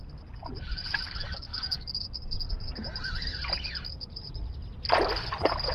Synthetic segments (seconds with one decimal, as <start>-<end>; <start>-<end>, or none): none